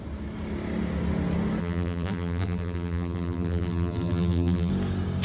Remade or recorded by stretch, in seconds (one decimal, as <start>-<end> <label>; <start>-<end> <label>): 0.0-1.6 recorded; 1.6-4.7 remade; 4.7-5.2 recorded

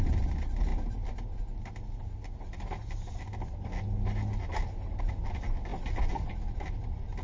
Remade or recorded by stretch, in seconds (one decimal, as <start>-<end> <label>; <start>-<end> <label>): 0.0-7.2 recorded

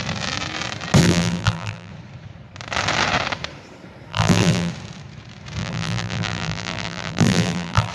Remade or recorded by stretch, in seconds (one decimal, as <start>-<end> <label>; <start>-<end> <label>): 0.0-1.0 recorded; 1.0-1.9 remade; 1.9-4.1 recorded; 4.1-4.7 remade; 4.7-5.6 recorded; 5.6-7.9 remade

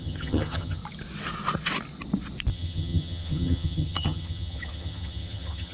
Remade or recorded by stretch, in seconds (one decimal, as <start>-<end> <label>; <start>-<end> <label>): 0.0-0.8 remade; 0.8-2.5 recorded; 2.5-5.7 remade

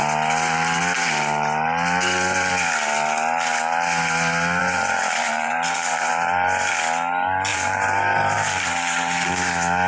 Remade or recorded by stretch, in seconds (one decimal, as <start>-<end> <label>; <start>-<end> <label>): 0.0-4.6 recorded; 4.6-6.1 remade; 6.1-7.5 recorded; 7.5-9.3 remade; 9.3-9.9 recorded

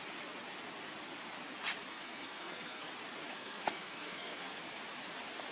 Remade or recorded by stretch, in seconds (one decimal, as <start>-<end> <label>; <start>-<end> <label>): 0.0-1.9 recorded; 1.9-2.9 remade; 2.9-3.3 recorded; 3.3-4.6 remade; 4.6-5.5 recorded

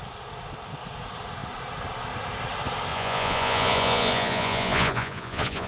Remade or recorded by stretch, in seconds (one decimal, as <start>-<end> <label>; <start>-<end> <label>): 0.0-2.9 recorded; 2.9-5.7 remade